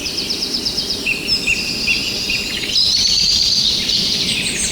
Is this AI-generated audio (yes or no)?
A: yes